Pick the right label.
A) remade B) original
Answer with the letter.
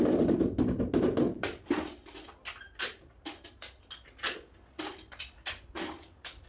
B